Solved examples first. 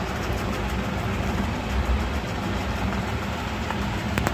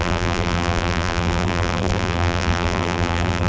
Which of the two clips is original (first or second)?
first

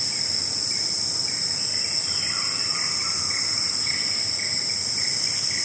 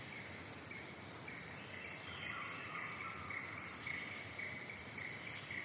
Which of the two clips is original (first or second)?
first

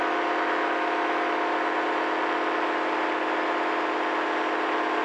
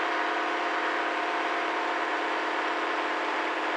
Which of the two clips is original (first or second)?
first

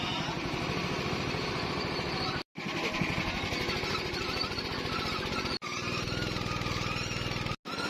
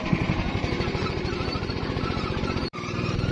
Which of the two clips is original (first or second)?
first